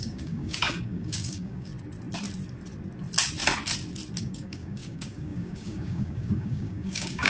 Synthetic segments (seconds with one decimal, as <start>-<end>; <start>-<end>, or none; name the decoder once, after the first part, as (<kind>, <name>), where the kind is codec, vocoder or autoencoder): 0.0-1.7 (codec, DAC); 4.2-7.3

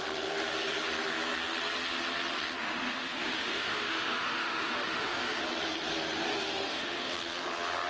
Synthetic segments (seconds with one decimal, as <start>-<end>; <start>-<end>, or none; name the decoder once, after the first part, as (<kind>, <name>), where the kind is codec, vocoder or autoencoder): 2.6-5.4 (autoencoder, DAC-VAE); 6.3-7.1